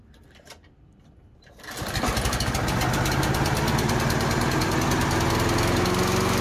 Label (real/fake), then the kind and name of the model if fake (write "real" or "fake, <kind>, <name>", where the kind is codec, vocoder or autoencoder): real